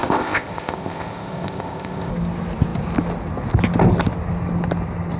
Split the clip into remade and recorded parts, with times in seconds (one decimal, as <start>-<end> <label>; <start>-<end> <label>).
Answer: 0.0-2.1 remade; 2.1-5.2 recorded